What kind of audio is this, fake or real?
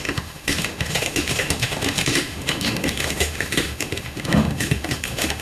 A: fake